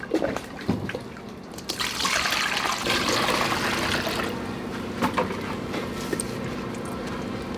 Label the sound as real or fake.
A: real